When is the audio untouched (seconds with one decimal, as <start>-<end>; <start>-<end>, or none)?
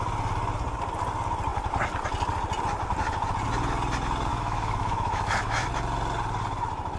0.0-4.3; 5.7-7.0